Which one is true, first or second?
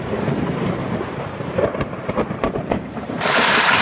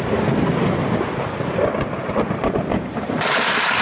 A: second